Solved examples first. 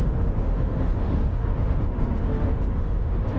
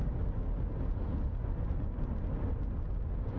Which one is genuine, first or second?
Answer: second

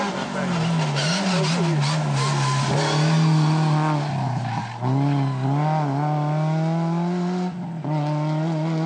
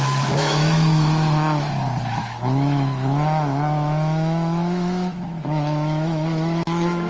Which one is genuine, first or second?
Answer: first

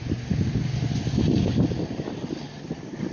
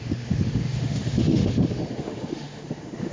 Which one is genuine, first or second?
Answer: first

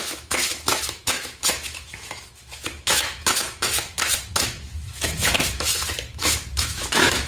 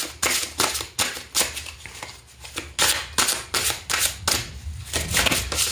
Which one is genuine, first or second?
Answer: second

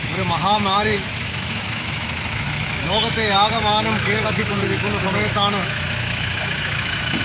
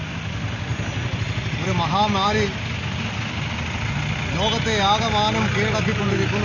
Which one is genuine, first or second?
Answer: second